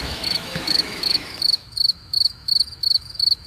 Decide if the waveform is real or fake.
fake